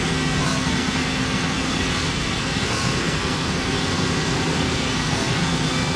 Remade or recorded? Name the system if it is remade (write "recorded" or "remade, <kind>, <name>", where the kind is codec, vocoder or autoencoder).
remade, codec, SNAC